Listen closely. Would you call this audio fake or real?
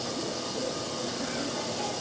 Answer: real